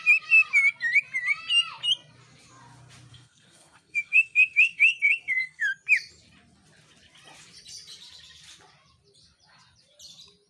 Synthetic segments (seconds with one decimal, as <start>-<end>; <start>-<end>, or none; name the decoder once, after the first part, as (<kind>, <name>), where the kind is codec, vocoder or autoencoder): 3.1-5.7 (codec, SNAC)